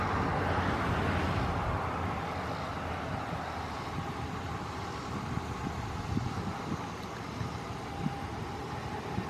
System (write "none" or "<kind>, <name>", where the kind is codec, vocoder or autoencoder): none